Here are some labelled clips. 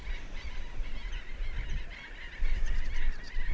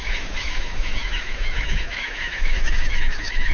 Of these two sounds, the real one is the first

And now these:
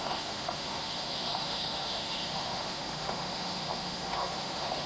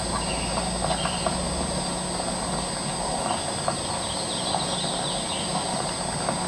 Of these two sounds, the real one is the second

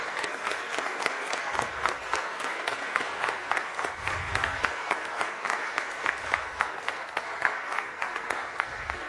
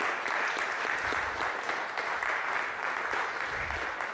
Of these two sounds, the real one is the second